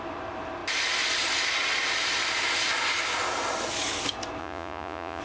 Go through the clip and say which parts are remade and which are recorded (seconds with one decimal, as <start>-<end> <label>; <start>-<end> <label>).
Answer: 0.0-4.4 recorded; 4.4-5.2 remade